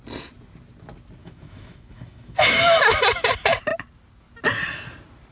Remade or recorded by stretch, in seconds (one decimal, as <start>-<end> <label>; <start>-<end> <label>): 0.0-1.2 recorded; 1.2-3.0 remade; 3.0-5.3 recorded

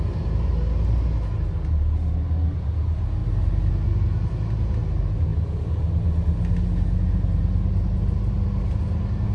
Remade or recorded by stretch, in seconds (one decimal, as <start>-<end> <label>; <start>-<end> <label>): 0.0-9.3 recorded

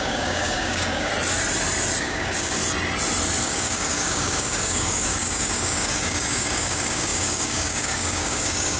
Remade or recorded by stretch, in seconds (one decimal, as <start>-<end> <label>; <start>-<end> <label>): 0.0-1.1 remade; 1.1-2.0 recorded; 2.0-2.6 remade; 2.6-3.4 recorded; 3.4-8.8 remade

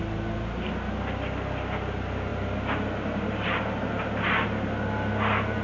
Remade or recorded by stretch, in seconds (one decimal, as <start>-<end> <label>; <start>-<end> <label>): 0.0-5.6 recorded

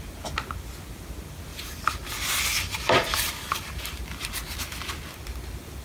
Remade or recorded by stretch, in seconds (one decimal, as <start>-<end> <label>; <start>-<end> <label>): 0.0-1.5 recorded; 1.5-2.1 remade; 2.1-2.5 recorded; 2.5-3.9 remade; 3.9-5.8 recorded

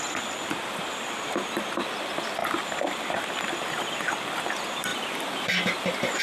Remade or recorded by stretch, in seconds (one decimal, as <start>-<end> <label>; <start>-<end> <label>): 0.0-4.9 recorded; 4.9-6.2 remade